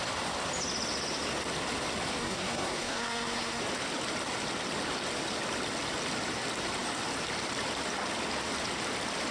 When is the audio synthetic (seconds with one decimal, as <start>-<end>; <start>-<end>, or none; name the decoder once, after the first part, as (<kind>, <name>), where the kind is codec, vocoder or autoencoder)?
2.2-3.6 (codec, SNAC)